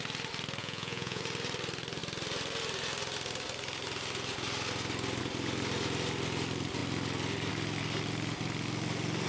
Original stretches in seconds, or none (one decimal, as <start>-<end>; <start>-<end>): 0.0-0.6; 1.2-9.3